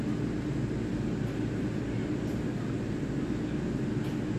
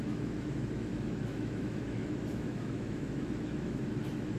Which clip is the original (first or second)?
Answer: first